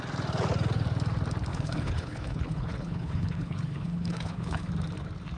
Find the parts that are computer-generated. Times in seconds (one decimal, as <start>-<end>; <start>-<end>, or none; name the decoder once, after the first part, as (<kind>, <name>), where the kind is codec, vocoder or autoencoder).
1.5-4.7 (codec, HILCodec)